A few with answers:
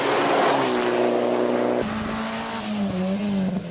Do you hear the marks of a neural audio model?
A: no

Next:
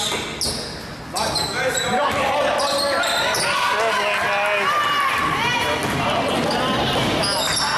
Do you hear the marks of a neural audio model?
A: no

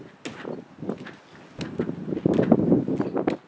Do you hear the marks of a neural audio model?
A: no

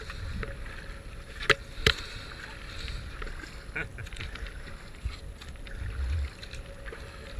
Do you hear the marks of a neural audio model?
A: no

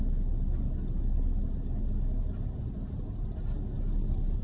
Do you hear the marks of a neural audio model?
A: no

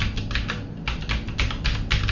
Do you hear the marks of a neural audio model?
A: no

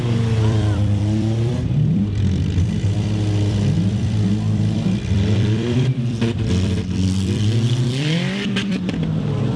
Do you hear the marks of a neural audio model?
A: yes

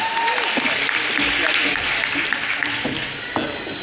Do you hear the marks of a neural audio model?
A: no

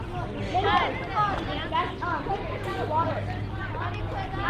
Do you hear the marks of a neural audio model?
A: no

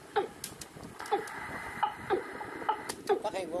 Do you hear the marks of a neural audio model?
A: no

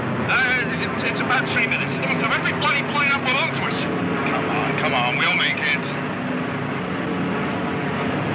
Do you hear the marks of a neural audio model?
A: no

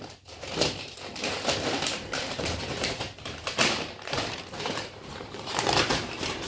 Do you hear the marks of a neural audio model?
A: yes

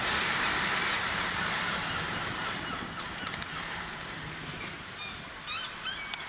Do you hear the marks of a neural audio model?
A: yes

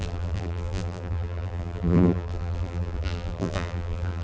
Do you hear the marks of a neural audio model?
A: yes